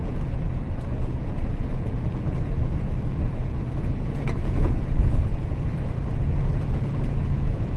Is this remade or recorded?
remade